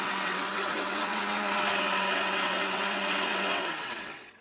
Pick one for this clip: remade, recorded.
remade